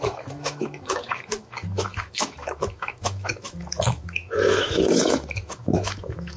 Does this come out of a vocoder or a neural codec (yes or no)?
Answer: yes